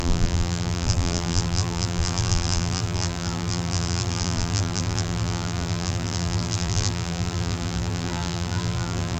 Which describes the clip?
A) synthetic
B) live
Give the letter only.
A